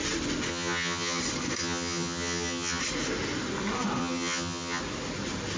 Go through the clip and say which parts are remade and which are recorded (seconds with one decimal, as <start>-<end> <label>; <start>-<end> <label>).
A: 0.0-0.5 recorded; 0.5-1.2 remade; 1.2-1.6 recorded; 1.6-2.8 remade; 2.8-4.0 recorded; 4.0-4.8 remade; 4.8-5.6 recorded